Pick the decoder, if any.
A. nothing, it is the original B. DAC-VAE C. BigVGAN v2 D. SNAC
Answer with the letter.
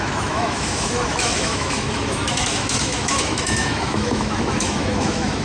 B